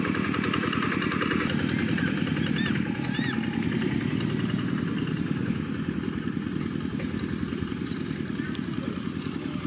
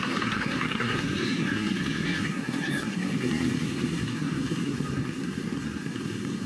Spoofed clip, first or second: second